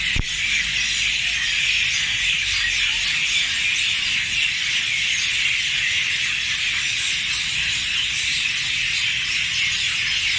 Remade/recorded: recorded